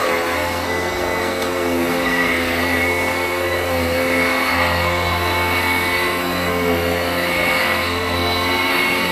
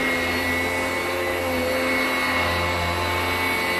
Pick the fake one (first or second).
first